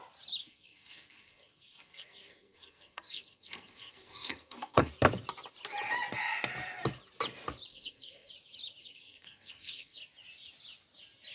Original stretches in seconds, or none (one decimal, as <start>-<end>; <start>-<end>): 0.0-0.4; 4.9-7.7; 8.3-8.8; 10.0-11.3